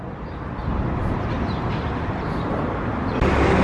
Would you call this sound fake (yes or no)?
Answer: no